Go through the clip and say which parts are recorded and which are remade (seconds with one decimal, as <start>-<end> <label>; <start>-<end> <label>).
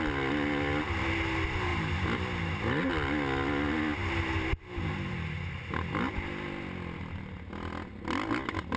0.0-8.8 recorded